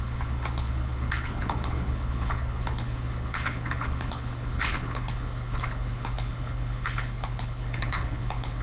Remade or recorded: remade